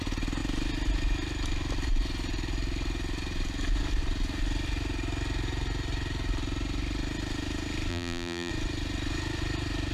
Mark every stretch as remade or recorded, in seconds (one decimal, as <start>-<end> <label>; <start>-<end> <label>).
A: 0.0-7.9 recorded; 7.9-8.5 remade; 8.5-9.9 recorded